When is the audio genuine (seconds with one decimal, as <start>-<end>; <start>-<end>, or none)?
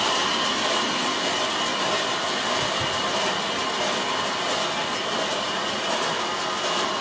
0.0-5.3; 5.9-7.0